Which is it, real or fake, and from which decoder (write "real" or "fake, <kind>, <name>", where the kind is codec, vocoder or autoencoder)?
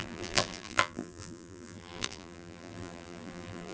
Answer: fake, vocoder, BigVGAN v2